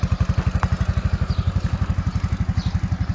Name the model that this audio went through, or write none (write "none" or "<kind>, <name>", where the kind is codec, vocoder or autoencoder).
none